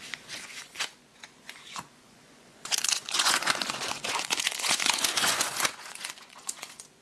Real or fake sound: fake